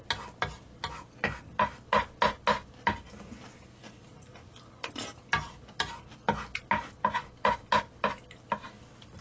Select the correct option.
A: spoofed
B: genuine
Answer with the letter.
B